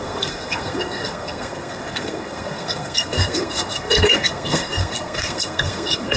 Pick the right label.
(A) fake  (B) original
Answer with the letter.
A